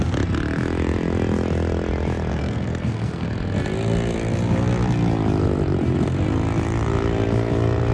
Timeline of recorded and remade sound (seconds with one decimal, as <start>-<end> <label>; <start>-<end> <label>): 0.0-2.3 recorded; 2.3-3.3 remade; 3.3-7.9 recorded